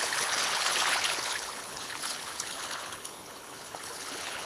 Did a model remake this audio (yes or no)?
yes